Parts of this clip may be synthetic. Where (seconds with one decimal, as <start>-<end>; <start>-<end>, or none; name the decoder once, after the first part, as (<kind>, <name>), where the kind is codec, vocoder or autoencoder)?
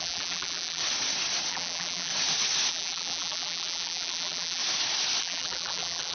0.0-0.8 (vocoder, BigVGAN v2); 1.5-2.1; 2.7-4.6; 5.2-6.1